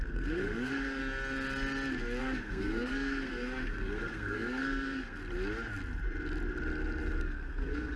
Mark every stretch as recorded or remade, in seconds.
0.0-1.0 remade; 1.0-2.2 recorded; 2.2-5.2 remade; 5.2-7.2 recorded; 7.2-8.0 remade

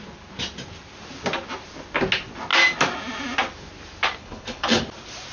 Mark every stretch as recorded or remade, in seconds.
0.0-4.2 recorded; 4.2-4.8 remade; 4.8-5.3 recorded